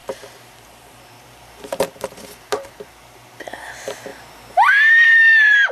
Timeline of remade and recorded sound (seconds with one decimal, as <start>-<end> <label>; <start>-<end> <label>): 0.0-3.4 remade; 3.4-4.1 recorded; 4.1-5.7 remade